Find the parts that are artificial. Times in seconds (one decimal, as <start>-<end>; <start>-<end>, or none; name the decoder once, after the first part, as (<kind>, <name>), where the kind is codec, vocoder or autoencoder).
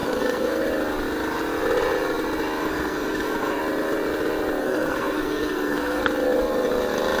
0.0-0.6 (codec, SNAC); 2.6-3.6; 4.6-6.0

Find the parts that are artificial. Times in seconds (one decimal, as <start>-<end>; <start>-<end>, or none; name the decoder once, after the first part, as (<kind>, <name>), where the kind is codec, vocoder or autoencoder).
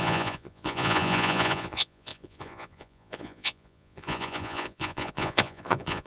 0.0-6.1 (vocoder, Vocos)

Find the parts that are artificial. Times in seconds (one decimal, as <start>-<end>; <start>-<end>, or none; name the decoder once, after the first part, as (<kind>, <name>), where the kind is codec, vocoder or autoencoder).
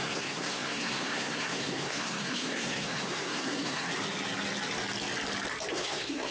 0.0-3.9 (codec, SNAC); 5.7-6.3